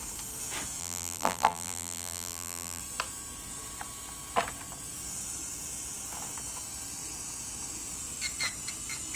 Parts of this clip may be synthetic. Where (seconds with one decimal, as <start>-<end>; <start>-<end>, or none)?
0.8-2.8